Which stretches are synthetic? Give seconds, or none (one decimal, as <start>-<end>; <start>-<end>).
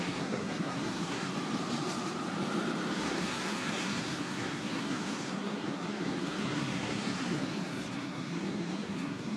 0.0-1.3; 3.0-9.4